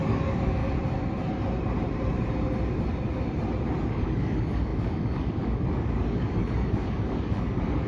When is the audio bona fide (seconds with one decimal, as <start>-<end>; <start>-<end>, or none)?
0.6-3.9